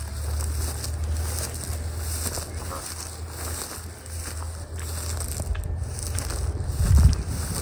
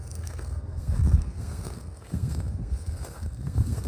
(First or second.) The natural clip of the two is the first